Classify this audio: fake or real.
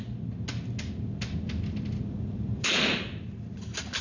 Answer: real